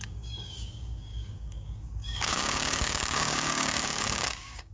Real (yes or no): no